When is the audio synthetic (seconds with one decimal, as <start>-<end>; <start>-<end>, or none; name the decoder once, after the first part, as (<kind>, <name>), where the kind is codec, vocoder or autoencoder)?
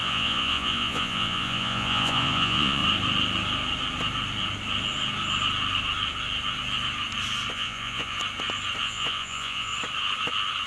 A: 0.0-2.8 (vocoder, Vocos); 7.5-8.2; 8.8-9.7